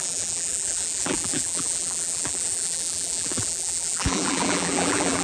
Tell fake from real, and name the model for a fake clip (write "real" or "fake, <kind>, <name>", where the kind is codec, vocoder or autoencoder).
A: fake, vocoder, BigVGAN v2